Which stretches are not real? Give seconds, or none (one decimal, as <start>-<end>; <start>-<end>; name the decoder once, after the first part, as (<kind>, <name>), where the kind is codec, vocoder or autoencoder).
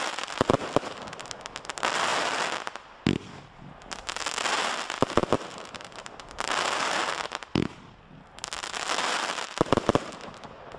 none